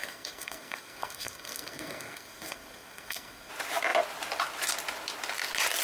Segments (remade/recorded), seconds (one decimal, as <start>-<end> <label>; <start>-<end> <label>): 0.0-3.5 remade; 3.5-5.8 recorded